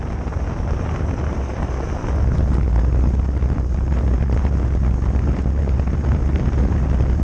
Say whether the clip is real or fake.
real